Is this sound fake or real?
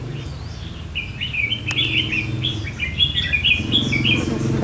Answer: real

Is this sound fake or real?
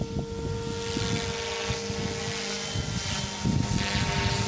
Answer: real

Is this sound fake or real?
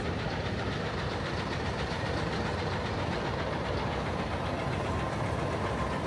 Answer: fake